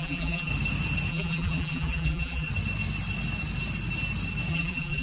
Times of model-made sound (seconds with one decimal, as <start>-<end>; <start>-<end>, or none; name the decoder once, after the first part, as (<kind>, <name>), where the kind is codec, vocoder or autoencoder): 0.0-0.5 (vocoder, BigVGAN v2); 1.1-2.5; 4.5-5.0